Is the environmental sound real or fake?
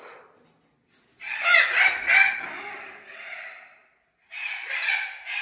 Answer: real